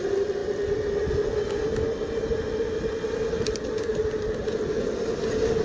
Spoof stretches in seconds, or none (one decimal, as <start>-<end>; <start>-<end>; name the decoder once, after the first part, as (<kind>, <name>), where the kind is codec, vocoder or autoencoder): none